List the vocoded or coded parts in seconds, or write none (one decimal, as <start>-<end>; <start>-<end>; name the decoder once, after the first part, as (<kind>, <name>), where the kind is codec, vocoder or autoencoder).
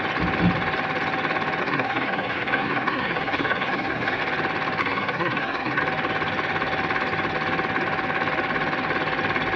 1.6-4.2 (codec, SNAC); 4.8-5.8